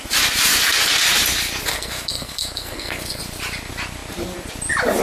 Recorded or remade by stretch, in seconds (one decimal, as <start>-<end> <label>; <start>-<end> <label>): 0.0-1.7 recorded; 1.7-3.2 remade; 3.2-5.0 recorded